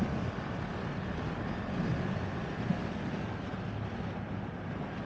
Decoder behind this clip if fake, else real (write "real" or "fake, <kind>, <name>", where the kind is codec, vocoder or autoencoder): real